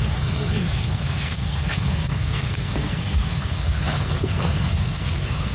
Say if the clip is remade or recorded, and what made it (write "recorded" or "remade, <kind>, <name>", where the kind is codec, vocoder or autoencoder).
remade, codec, SNAC